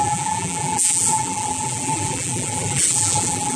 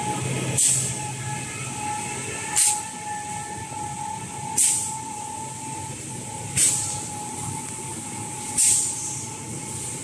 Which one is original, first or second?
second